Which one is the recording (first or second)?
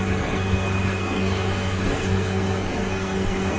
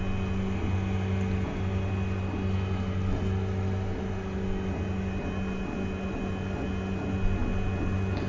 second